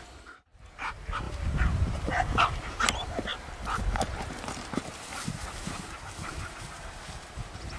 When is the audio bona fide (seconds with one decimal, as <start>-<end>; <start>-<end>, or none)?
none